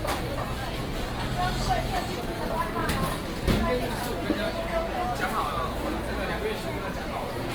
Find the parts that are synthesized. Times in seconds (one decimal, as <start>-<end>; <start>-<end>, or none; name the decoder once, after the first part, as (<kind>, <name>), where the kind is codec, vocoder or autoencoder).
0.0-0.6 (vocoder, BigVGAN v2); 1.8-2.8